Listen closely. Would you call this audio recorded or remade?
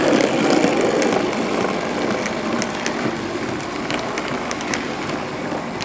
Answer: recorded